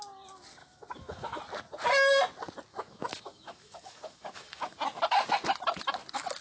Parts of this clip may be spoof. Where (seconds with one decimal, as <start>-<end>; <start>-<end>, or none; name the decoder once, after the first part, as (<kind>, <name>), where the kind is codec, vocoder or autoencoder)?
0.6-1.4 (autoencoder, DAC-VAE); 2.7-4.8